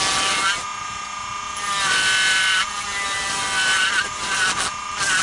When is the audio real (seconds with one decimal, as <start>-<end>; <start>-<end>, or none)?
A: 0.0-5.2